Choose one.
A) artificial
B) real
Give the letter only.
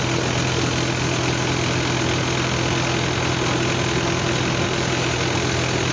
B